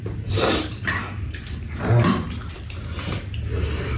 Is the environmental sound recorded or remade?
remade